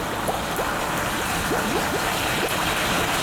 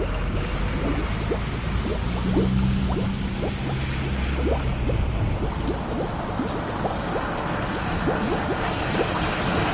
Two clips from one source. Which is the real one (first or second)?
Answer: second